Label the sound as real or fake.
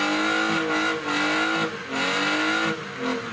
real